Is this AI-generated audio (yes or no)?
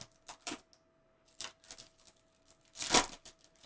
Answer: no